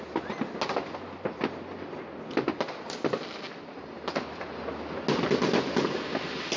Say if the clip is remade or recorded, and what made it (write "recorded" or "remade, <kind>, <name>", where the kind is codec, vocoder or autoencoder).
recorded